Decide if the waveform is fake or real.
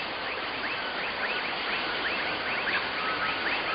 real